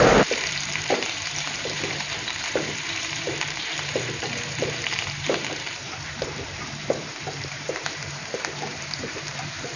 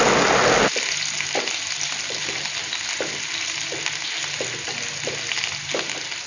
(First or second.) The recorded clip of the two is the second